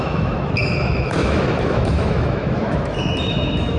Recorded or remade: remade